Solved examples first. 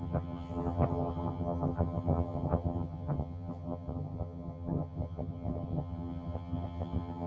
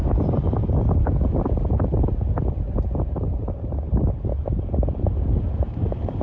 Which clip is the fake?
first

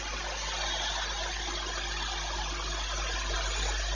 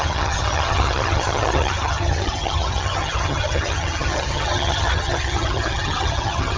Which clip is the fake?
second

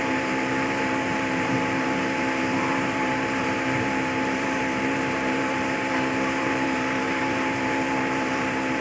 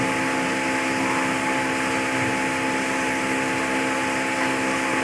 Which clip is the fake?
first